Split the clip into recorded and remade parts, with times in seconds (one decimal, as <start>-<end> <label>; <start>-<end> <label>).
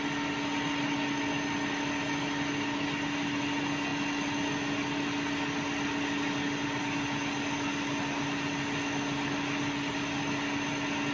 0.0-11.1 recorded